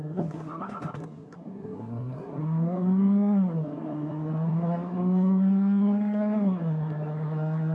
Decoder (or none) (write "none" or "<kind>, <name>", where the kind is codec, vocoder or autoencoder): codec, SNAC